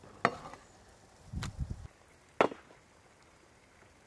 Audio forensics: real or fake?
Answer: real